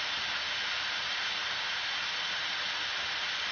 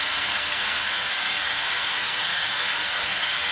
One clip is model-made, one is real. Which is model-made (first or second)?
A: second